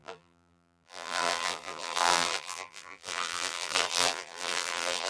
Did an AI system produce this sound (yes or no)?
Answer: yes